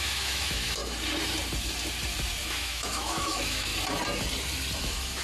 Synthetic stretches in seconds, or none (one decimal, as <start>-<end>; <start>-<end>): 0.0-0.8; 2.4-3.7; 4.8-5.2